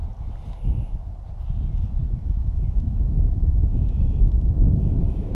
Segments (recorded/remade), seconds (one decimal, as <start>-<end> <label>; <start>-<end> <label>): 0.0-2.0 recorded; 2.0-5.3 remade